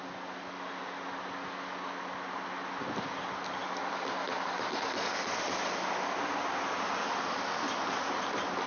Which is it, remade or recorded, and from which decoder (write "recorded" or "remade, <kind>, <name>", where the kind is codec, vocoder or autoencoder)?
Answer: recorded